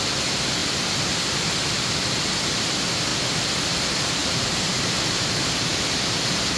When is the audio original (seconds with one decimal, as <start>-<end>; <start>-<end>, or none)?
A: 0.0-4.2